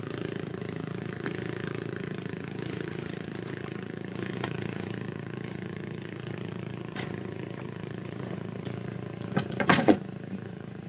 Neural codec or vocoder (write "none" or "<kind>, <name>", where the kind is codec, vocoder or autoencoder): vocoder, Vocos